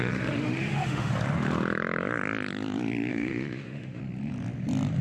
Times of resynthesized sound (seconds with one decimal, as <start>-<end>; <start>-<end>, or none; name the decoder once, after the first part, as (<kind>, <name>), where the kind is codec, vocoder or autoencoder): 0.0-1.1 (autoencoder, DAC-VAE); 3.1-4.0